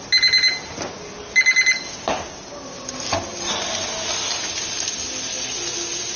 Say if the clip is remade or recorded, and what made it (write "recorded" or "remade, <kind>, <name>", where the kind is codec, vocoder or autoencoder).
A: recorded